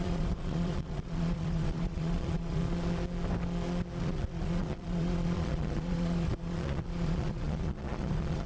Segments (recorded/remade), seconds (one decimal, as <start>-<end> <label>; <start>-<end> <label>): 0.0-2.6 remade; 2.6-4.0 recorded; 4.0-8.5 remade